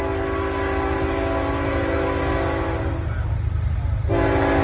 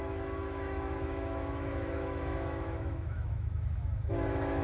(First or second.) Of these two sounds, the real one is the first